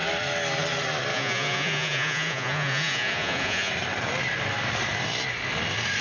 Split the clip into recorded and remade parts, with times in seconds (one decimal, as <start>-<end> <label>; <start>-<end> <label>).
0.0-1.1 recorded; 1.1-3.7 remade; 3.7-6.0 recorded